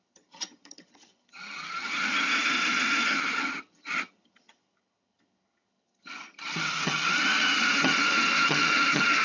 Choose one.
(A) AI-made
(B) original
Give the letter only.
A